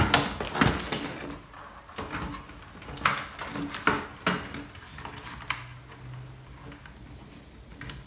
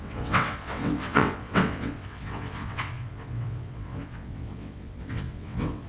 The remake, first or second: second